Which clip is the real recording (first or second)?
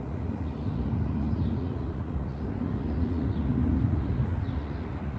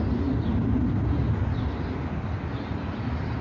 second